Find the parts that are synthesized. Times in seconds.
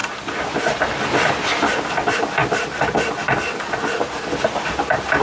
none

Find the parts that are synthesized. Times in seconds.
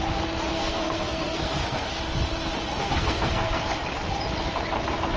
0.5-2.0 (codec, SNAC); 2.8-3.6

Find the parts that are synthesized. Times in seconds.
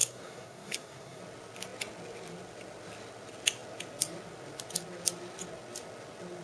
0.0-1.2 (codec, SNAC)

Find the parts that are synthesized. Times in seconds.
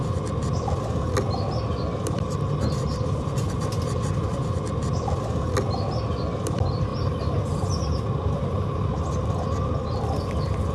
none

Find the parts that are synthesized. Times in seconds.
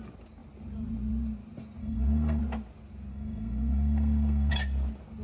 1.8-2.4 (codec, SNAC); 3.1-4.5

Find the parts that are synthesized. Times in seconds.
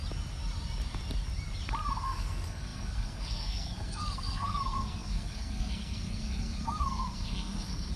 2.0-8.0 (codec, SNAC)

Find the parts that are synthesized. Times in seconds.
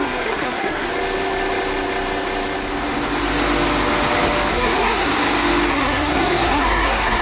0.0-0.9 (codec, SNAC); 4.5-5.1; 5.7-7.2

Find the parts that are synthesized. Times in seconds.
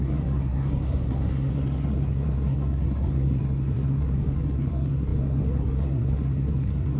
0.0-7.0 (codec, SNAC)